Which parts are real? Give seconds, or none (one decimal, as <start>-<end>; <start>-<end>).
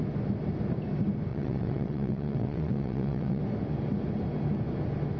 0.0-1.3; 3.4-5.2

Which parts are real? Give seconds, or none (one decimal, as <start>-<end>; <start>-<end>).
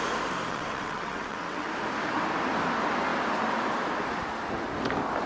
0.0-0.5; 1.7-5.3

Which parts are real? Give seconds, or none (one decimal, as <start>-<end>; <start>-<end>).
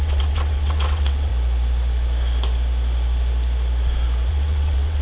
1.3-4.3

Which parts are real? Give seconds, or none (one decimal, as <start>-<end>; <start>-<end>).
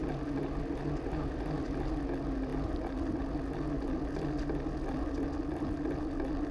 0.0-6.5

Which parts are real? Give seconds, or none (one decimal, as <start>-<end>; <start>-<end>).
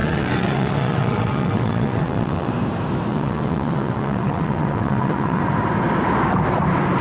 2.5-3.1; 5.4-7.0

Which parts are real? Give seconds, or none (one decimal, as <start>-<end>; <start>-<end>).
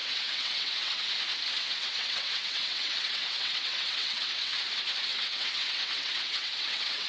1.1-1.6; 4.5-5.1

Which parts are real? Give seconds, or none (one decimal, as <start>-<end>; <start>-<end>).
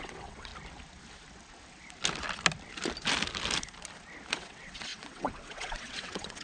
0.5-4.3